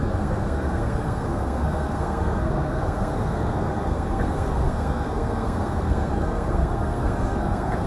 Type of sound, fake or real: fake